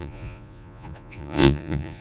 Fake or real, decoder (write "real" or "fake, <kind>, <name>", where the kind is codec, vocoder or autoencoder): fake, vocoder, Vocos